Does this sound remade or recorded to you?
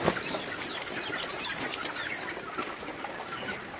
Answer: recorded